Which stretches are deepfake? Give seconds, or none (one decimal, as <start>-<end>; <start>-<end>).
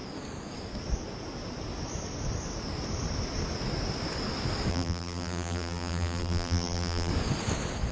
4.7-7.1